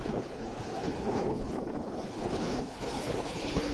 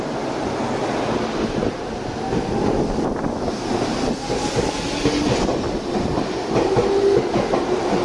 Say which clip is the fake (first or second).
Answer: first